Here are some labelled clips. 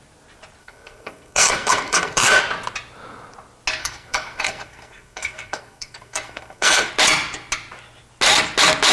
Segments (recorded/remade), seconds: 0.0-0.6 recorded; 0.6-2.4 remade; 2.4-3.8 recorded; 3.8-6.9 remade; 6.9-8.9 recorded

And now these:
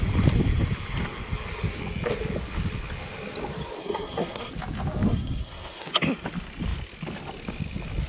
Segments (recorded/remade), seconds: 0.0-3.8 recorded; 3.8-4.5 remade; 4.5-5.1 recorded; 5.1-5.9 remade; 5.9-8.1 recorded